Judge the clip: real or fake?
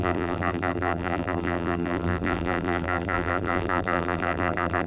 fake